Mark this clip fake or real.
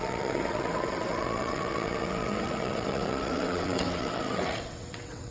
fake